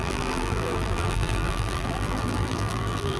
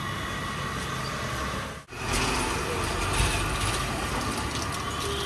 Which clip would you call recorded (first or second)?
second